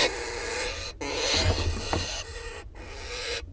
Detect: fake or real real